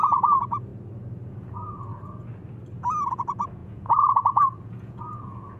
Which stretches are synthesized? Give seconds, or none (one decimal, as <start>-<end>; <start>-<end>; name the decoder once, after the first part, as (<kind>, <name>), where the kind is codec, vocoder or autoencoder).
0.0-0.7 (vocoder, Vocos); 1.3-1.9; 3.1-5.6

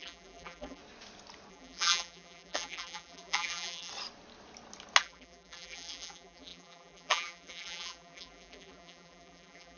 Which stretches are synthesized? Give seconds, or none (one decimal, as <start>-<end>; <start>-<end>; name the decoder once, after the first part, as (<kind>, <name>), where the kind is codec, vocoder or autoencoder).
0.0-0.8 (vocoder, BigVGAN v2); 1.5-3.9; 5.0-9.8